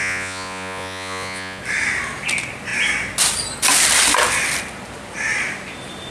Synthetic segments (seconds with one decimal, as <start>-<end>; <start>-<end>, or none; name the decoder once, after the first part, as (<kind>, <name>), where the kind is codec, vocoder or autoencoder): 0.0-1.6 (vocoder, Vocos)